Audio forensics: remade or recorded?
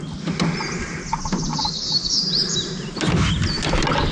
recorded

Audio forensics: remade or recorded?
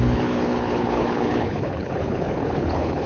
remade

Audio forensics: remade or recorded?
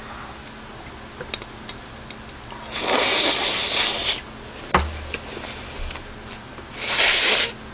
recorded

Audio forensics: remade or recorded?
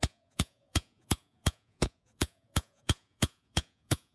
remade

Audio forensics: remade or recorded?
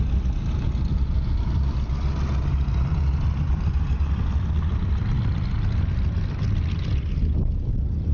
recorded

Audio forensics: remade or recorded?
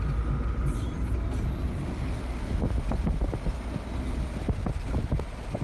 recorded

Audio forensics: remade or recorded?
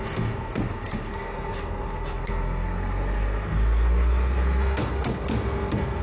remade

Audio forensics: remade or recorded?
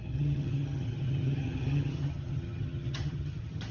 remade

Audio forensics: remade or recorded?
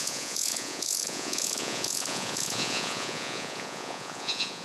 remade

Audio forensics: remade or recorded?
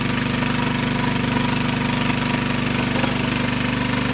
recorded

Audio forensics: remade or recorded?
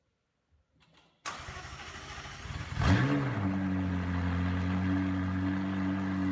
recorded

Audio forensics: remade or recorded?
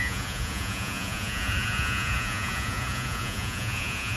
remade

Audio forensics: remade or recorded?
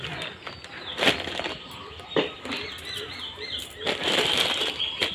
recorded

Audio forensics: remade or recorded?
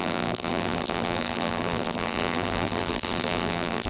remade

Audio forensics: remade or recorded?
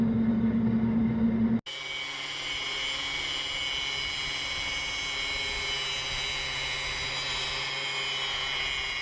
recorded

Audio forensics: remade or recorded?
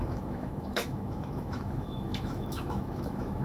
remade